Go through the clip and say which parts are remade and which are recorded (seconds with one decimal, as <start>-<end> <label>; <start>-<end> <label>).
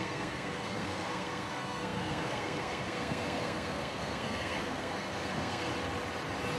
0.0-5.7 remade; 5.7-6.6 recorded